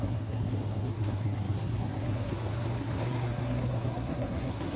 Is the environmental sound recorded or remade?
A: remade